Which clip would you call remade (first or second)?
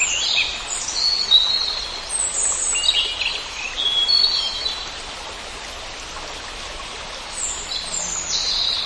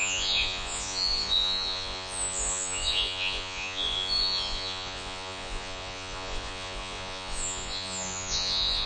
second